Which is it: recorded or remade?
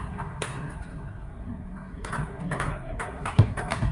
remade